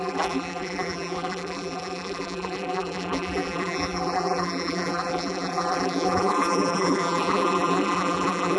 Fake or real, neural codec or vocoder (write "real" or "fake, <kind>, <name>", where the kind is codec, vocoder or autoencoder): fake, vocoder, BigVGAN v2